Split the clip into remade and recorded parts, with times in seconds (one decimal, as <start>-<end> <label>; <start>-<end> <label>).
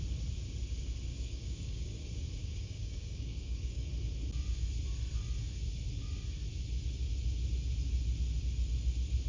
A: 0.0-1.1 recorded; 1.1-2.0 remade; 2.0-2.4 recorded; 2.4-3.9 remade; 3.9-9.3 recorded